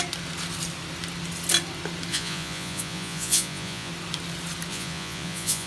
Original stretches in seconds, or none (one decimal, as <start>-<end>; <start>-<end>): 0.0-2.1; 3.9-4.7

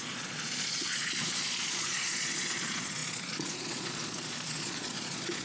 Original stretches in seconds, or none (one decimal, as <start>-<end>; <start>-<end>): none